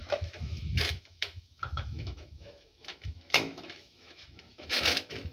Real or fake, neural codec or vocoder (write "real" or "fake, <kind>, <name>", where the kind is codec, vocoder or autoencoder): fake, autoencoder, DAC-VAE